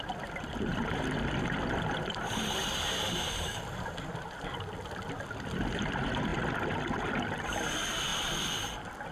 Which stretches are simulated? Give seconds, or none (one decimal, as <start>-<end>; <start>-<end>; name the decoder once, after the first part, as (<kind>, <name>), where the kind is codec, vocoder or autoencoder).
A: 0.7-2.7 (vocoder, BigVGAN v2)